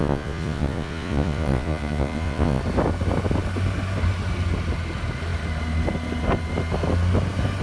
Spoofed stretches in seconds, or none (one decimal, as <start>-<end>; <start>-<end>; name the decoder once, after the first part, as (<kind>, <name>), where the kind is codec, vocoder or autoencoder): 0.0-2.6 (vocoder, Vocos)